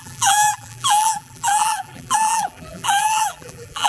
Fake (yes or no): yes